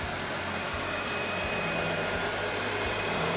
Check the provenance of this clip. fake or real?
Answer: fake